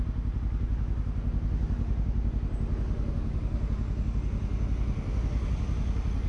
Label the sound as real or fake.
real